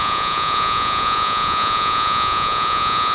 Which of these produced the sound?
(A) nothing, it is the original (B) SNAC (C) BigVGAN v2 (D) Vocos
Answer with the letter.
D